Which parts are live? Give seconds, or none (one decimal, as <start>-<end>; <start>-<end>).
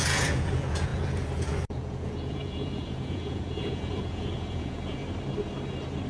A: 5.0-6.1